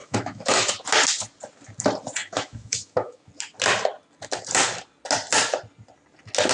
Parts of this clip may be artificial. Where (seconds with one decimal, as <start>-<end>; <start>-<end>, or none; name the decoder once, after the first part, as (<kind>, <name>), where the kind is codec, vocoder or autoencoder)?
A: 0.0-0.7 (autoencoder, DAC-VAE); 2.2-3.3